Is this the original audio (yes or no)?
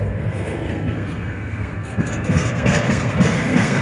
no